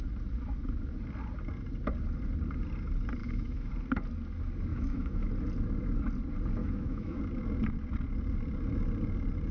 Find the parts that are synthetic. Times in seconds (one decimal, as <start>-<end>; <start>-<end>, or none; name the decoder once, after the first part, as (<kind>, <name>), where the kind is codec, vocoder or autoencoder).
3.2-3.7 (autoencoder, DAC-VAE); 4.7-5.3; 6.6-7.2